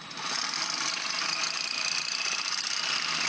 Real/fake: real